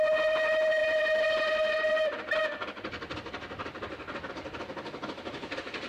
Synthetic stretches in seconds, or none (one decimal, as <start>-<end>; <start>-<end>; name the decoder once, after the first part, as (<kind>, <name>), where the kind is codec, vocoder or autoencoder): none